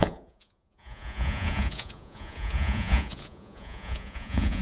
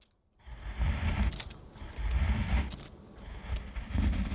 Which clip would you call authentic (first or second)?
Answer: second